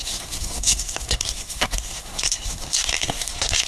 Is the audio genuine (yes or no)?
no